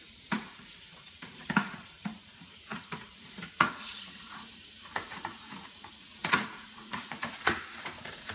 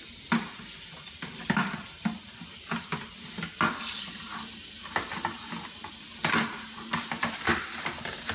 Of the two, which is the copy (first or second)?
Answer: first